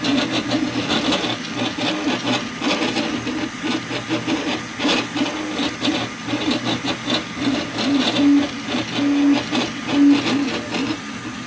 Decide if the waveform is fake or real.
real